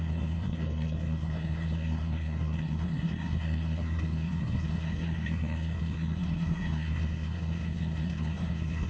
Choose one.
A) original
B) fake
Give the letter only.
B